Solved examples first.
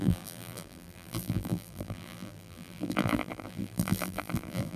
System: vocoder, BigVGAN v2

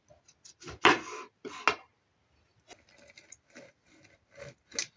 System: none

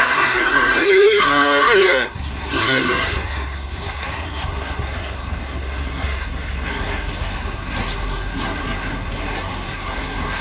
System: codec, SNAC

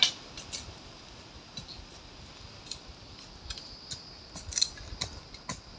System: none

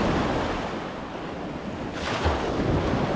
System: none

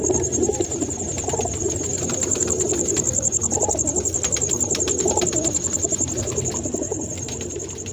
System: vocoder, BigVGAN v2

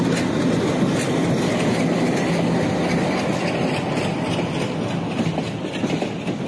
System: none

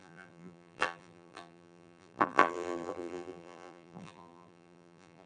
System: vocoder, BigVGAN v2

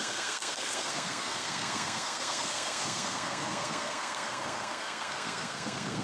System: codec, SNAC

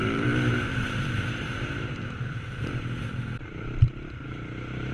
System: vocoder, BigVGAN v2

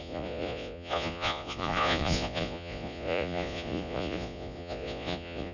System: vocoder, Vocos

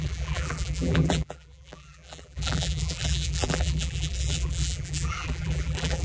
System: vocoder, BigVGAN v2